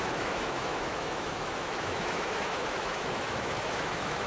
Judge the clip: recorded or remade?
remade